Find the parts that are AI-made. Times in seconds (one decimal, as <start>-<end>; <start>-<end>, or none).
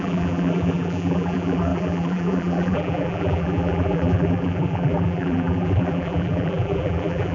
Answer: 0.0-7.3